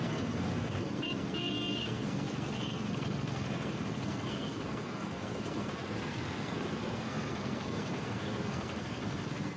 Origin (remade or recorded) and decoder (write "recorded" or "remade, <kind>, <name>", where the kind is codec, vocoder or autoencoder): remade, codec, SNAC